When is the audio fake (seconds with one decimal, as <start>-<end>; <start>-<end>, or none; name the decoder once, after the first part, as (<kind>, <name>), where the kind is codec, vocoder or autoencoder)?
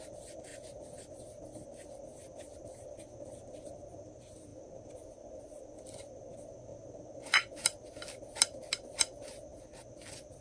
none